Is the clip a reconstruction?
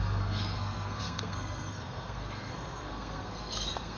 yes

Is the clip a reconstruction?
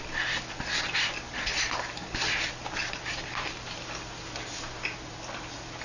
no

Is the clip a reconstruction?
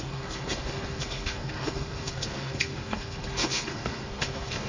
yes